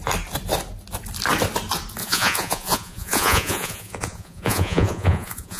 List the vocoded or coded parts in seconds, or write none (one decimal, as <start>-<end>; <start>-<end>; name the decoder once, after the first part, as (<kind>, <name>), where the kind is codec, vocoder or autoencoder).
2.0-5.6 (vocoder, Vocos)